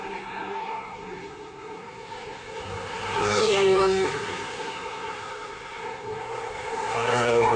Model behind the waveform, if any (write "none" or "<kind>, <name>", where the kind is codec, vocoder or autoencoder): codec, SNAC